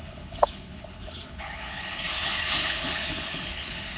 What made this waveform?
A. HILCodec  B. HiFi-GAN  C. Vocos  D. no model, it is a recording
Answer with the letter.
A